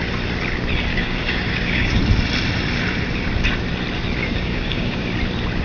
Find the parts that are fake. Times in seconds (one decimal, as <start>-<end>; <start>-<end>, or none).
0.9-2.0; 4.2-5.1